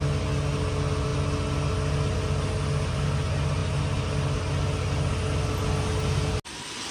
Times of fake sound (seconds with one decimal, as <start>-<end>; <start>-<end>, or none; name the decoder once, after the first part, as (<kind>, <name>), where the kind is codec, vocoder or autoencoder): none